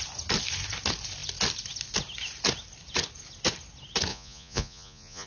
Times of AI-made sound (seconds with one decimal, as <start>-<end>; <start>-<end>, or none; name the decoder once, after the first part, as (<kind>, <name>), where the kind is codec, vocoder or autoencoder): 4.1-5.3 (vocoder, Vocos)